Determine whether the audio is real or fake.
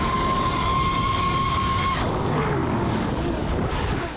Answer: fake